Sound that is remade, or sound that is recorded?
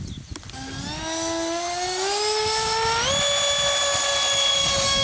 recorded